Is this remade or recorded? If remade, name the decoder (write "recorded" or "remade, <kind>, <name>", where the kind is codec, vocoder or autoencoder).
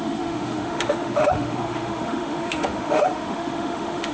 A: remade, autoencoder, DAC-VAE